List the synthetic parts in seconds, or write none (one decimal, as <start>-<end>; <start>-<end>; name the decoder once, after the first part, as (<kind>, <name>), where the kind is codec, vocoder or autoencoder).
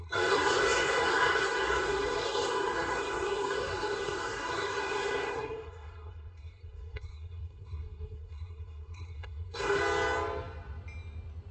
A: 0.0-9.8 (codec, SNAC)